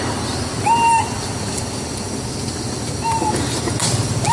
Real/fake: real